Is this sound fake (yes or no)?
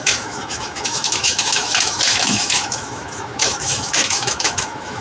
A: yes